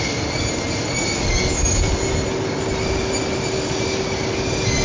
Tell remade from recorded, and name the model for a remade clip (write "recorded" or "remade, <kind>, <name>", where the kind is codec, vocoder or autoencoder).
recorded